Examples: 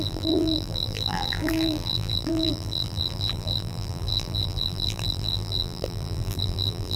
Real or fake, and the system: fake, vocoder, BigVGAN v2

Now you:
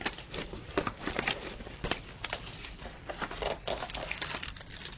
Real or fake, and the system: fake, vocoder, BigVGAN v2